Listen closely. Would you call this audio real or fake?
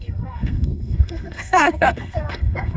fake